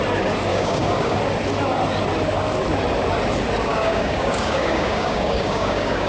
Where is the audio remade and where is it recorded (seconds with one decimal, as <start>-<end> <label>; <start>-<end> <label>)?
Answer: 0.0-0.5 recorded; 0.5-1.2 remade; 1.2-3.7 recorded; 3.7-6.1 remade

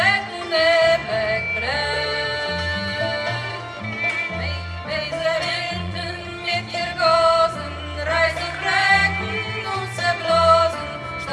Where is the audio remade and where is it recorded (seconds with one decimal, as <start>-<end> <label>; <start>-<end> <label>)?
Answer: 0.0-5.2 recorded; 5.2-6.3 remade; 6.3-11.3 recorded

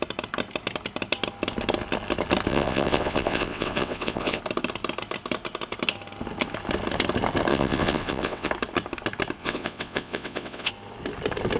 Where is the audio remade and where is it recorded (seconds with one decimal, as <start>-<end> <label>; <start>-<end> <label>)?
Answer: 0.0-2.5 recorded; 2.5-4.4 remade; 4.4-7.5 recorded; 7.5-8.5 remade; 8.5-9.4 recorded; 9.4-10.7 remade; 10.7-11.6 recorded

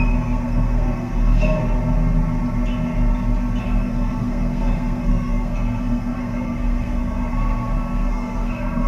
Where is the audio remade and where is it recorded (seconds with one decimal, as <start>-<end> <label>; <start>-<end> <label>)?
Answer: 0.0-1.6 remade; 1.6-3.6 recorded; 3.6-8.9 remade